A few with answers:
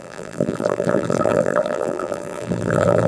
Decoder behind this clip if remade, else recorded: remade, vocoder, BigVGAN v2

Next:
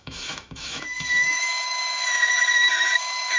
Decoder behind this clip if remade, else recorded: remade, autoencoder, DAC-VAE